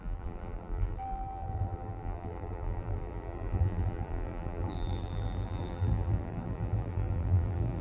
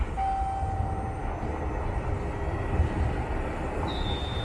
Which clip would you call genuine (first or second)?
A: second